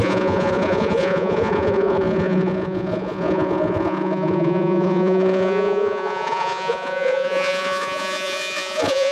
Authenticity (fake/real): fake